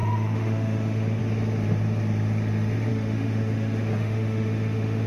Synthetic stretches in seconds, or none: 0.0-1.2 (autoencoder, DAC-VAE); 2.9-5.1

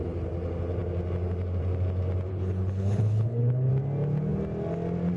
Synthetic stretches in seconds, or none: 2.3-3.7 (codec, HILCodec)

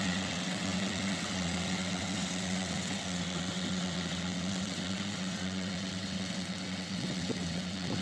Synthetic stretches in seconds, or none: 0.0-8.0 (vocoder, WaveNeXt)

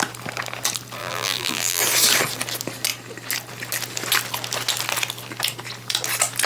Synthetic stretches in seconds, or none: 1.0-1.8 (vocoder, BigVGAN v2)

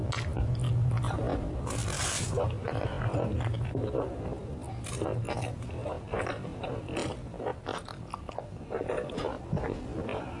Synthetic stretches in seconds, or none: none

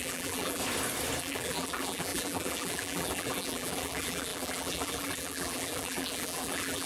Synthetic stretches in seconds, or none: 0.0-0.6 (vocoder, BigVGAN v2); 1.2-6.9